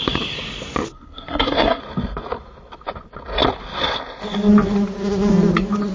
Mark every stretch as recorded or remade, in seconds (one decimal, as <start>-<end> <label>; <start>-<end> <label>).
0.0-0.9 recorded; 0.9-1.8 remade; 1.8-5.9 recorded